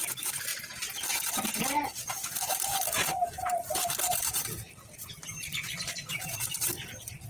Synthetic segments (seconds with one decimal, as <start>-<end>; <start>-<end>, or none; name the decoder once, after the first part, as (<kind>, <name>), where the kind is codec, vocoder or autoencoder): 2.3-6.7 (vocoder, BigVGAN v2)